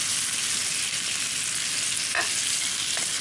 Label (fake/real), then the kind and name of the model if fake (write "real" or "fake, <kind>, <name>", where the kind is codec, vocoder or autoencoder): real